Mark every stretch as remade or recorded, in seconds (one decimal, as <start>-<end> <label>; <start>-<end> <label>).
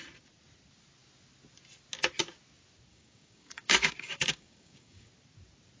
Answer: 0.0-2.9 recorded; 2.9-5.1 remade; 5.1-5.8 recorded